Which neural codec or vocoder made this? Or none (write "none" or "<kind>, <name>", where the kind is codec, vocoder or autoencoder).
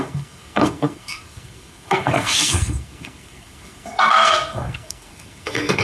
codec, SNAC